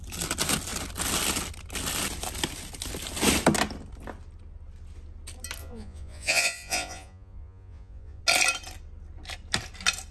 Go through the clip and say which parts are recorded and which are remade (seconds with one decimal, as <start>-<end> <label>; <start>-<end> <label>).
0.0-5.6 recorded; 5.6-8.2 remade; 8.2-10.1 recorded